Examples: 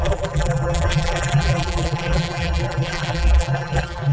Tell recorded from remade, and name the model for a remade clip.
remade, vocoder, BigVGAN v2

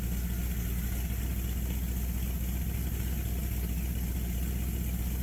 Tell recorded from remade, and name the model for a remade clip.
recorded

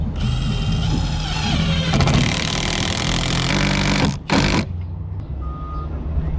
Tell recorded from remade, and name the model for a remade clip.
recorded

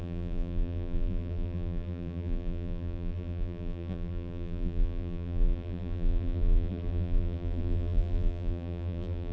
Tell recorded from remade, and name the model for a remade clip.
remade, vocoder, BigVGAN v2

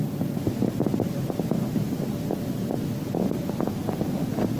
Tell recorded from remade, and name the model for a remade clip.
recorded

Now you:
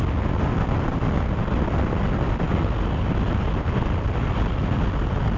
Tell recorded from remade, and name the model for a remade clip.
recorded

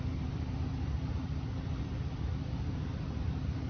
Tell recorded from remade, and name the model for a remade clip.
recorded